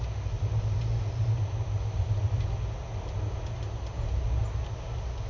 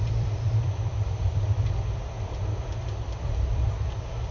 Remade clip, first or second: second